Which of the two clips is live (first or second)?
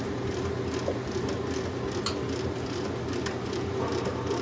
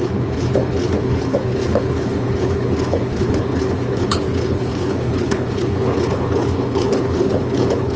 first